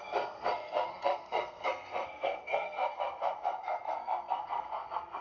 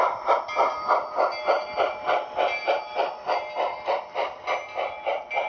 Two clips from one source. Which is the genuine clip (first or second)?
second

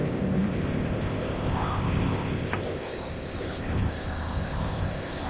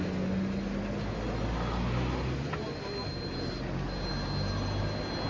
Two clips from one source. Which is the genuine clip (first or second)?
second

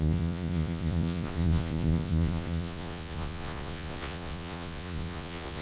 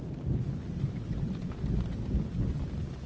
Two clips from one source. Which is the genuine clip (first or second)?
second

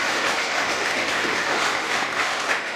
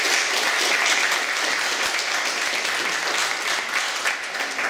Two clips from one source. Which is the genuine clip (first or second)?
second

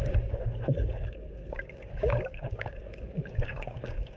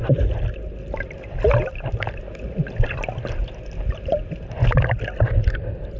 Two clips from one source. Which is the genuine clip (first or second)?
second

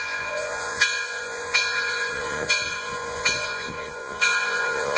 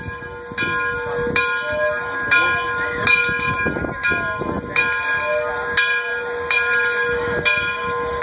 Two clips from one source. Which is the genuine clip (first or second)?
second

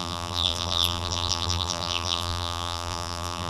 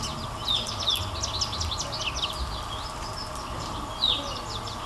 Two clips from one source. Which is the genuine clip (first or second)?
second